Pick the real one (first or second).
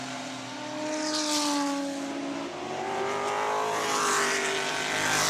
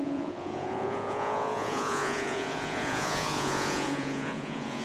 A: first